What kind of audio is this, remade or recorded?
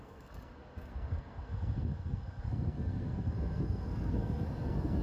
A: remade